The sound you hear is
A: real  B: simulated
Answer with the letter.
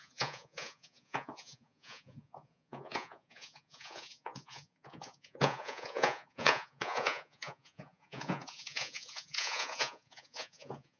B